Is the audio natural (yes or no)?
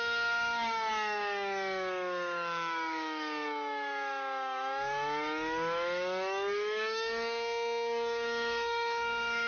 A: no